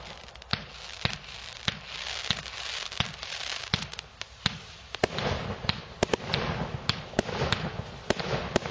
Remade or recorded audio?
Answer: recorded